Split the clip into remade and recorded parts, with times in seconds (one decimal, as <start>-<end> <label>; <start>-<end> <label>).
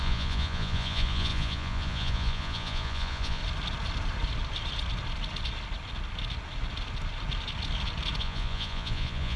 0.0-3.4 remade; 3.4-8.2 recorded; 8.2-9.4 remade